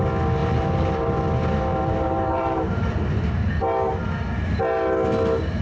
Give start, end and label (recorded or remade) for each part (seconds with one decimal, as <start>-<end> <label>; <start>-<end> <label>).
0.0-0.4 recorded; 0.4-1.2 remade; 1.2-1.7 recorded; 1.7-3.6 remade; 3.6-5.6 recorded